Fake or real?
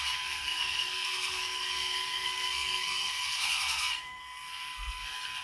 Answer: fake